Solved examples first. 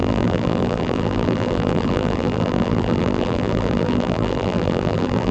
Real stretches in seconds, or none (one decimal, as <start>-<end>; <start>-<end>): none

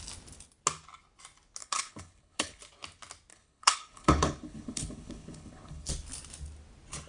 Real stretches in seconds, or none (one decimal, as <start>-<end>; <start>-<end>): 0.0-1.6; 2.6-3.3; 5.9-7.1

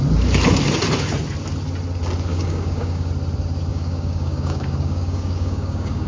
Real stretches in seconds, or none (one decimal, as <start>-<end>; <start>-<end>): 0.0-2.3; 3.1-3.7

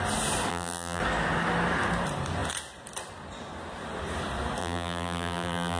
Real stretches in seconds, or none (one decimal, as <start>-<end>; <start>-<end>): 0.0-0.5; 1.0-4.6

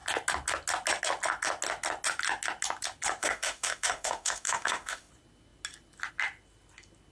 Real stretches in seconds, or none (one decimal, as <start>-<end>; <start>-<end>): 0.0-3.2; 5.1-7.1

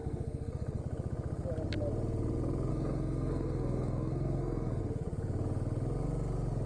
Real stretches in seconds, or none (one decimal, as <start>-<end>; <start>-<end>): 0.8-2.7; 4.8-6.7